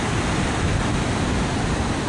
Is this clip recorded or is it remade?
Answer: recorded